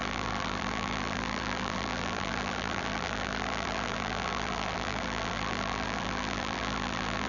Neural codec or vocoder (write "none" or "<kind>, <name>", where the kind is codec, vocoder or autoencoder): vocoder, BigVGAN v2